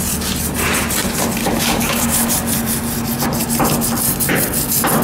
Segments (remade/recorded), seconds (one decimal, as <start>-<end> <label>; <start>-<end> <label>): 0.0-1.4 recorded; 1.4-2.3 remade; 2.3-5.0 recorded